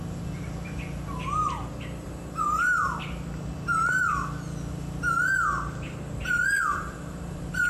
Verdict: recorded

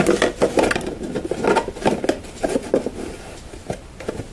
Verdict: recorded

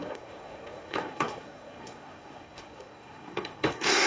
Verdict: remade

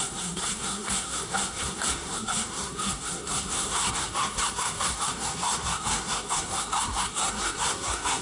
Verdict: remade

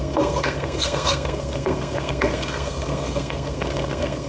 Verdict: remade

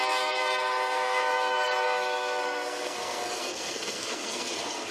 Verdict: remade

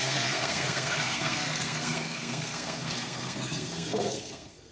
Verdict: remade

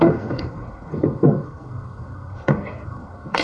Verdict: remade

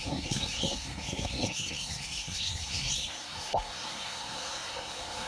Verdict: remade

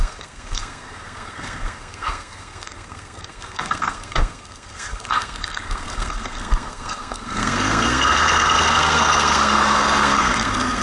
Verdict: remade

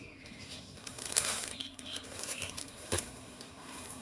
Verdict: remade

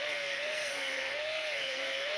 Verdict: remade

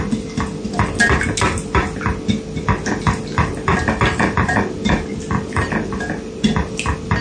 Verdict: recorded